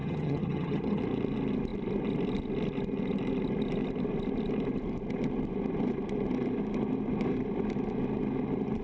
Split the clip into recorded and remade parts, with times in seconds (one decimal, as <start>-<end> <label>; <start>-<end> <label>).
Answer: 0.0-1.0 remade; 1.0-8.8 recorded